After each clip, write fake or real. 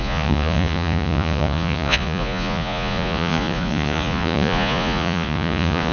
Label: fake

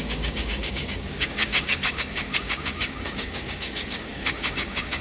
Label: fake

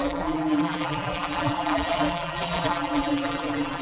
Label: fake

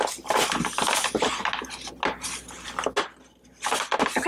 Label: real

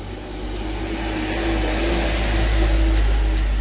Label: real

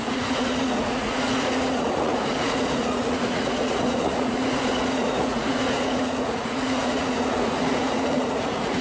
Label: fake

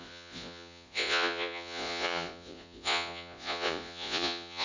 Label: fake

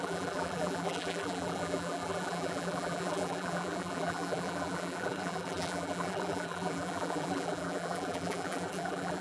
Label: fake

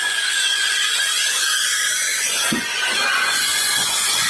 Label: fake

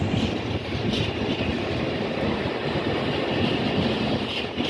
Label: real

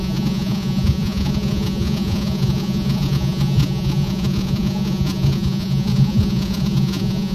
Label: fake